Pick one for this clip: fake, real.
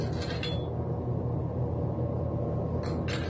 real